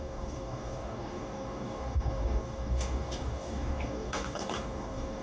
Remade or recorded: remade